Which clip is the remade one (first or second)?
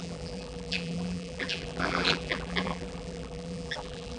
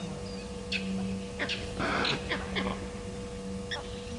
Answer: first